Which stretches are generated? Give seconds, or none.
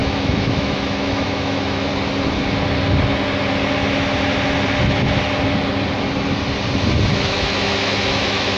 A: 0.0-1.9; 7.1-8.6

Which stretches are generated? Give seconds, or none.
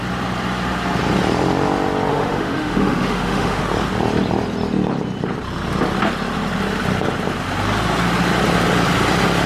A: 2.1-3.6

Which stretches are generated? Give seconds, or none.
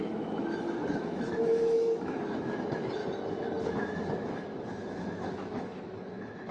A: 0.0-3.0; 3.6-6.5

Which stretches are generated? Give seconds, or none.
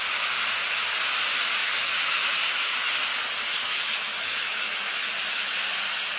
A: 1.6-2.9; 3.5-5.5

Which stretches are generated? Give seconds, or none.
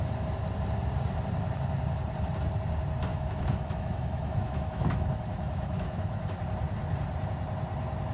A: 3.1-6.4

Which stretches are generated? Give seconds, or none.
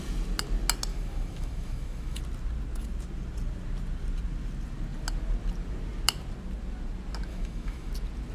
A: 0.9-2.2; 7.3-7.9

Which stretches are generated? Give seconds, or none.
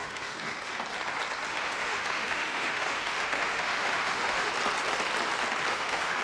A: 0.0-0.8; 1.5-4.5; 5.7-6.2